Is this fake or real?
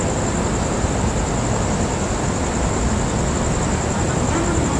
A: real